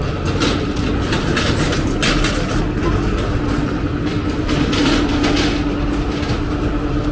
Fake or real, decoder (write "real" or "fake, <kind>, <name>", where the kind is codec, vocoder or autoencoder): real